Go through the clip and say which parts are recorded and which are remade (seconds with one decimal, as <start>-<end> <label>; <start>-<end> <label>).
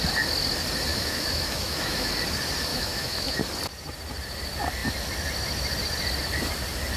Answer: 0.0-0.9 recorded; 0.9-2.1 remade; 2.1-2.7 recorded; 2.7-3.4 remade; 3.4-7.0 recorded